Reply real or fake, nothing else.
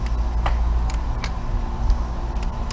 real